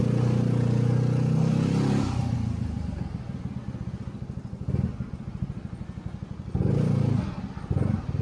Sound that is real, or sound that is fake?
real